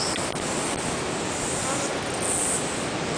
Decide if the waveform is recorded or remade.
recorded